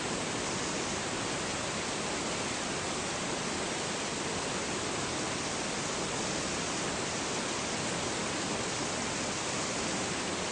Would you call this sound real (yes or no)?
yes